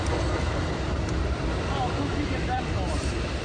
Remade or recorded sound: remade